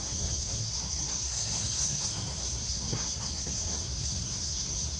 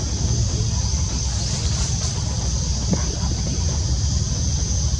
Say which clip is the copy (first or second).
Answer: first